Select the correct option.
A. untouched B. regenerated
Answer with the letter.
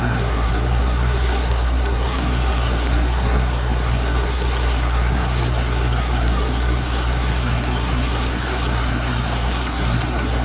B